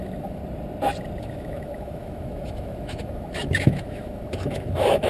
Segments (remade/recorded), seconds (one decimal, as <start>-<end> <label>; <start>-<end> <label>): 0.0-0.4 remade; 0.4-1.2 recorded; 1.2-5.1 remade

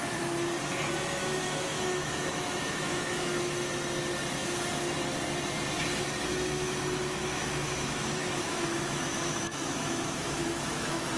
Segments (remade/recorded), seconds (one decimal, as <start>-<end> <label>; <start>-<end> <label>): 0.0-1.2 recorded; 1.2-3.7 remade; 3.7-6.2 recorded; 6.2-11.2 remade

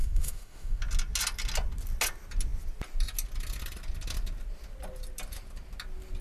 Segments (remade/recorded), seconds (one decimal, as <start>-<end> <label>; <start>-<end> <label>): 0.0-0.8 remade; 0.8-6.2 recorded

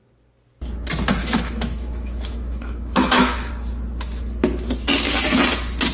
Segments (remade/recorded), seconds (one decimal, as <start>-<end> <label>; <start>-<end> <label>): 0.0-1.2 recorded; 1.2-3.5 remade; 3.5-5.9 recorded

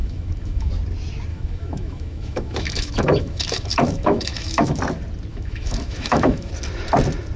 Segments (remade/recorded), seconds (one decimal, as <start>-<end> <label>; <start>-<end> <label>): 0.0-0.7 remade; 0.7-1.3 recorded; 1.3-4.8 remade; 4.8-5.3 recorded; 5.3-6.5 remade; 6.5-7.4 recorded

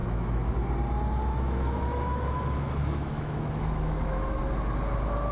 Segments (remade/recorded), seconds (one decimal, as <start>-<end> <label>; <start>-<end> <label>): 0.0-0.5 remade; 0.5-1.2 recorded; 1.2-4.4 remade; 4.4-5.3 recorded

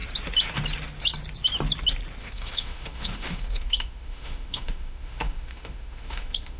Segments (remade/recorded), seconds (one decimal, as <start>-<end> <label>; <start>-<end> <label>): 0.0-2.2 recorded; 2.2-6.6 remade

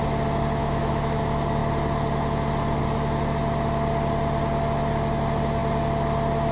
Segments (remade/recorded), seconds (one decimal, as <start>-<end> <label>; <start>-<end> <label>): 0.0-0.6 recorded; 0.6-1.2 remade; 1.2-6.5 recorded